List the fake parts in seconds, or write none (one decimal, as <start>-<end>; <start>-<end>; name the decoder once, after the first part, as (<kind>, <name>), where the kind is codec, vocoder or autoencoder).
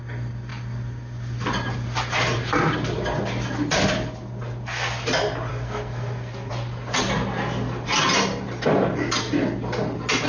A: 5.5-6.5 (codec, SNAC)